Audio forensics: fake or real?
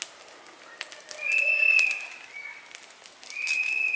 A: real